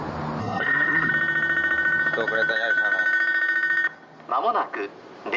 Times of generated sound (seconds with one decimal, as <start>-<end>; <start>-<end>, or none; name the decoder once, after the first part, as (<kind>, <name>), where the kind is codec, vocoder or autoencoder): 0.4-1.1 (codec, SNAC)